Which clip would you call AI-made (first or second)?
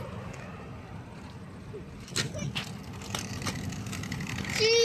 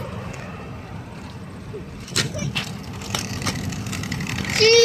second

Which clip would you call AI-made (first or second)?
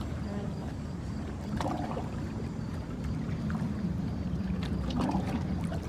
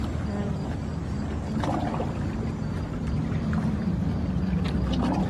first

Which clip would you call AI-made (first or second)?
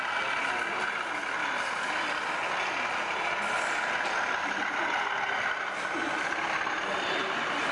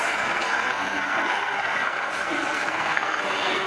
second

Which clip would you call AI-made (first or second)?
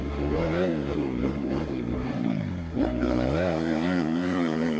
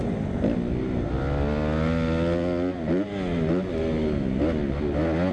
first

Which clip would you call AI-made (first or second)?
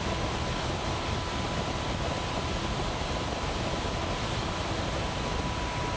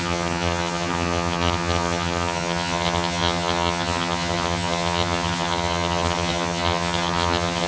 second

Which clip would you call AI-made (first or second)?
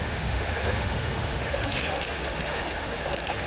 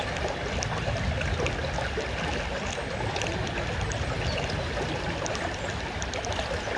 first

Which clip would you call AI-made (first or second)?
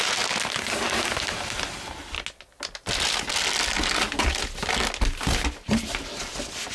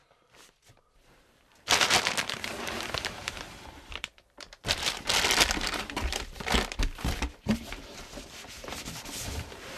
second